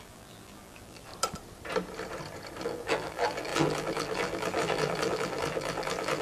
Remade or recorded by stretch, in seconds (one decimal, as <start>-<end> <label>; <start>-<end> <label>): 0.0-1.1 remade; 1.1-2.6 recorded; 2.6-6.2 remade